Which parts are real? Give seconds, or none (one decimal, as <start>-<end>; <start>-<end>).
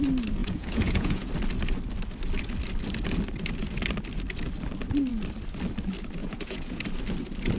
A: 0.0-0.4; 1.3-6.2; 6.8-7.6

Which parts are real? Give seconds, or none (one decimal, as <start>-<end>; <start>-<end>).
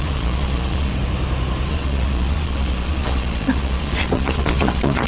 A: 0.9-1.7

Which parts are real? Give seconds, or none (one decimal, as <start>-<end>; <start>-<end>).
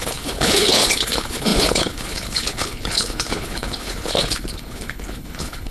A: none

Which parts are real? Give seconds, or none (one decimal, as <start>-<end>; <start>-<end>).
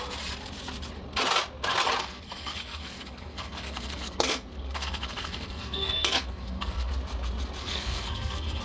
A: 0.0-2.0; 6.9-7.6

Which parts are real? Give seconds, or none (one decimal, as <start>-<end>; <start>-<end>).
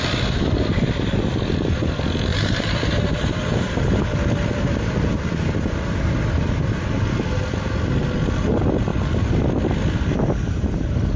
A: 0.0-2.3; 3.7-11.2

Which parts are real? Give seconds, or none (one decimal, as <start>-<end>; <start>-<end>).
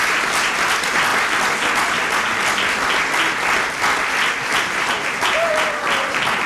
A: 0.0-4.5; 5.5-6.5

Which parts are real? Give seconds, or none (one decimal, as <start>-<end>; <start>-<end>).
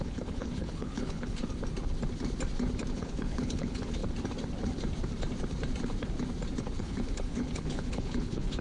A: 1.4-2.9; 4.0-6.6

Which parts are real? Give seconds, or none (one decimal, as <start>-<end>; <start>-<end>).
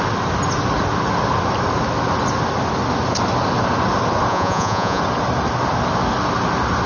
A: 0.0-4.3; 5.0-6.9